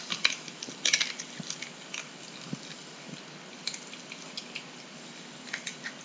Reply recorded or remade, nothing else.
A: recorded